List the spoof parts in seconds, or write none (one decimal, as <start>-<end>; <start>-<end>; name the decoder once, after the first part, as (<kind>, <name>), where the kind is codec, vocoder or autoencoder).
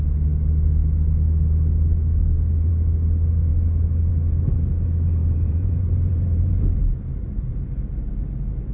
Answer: 5.2-7.7 (vocoder, BigVGAN v2)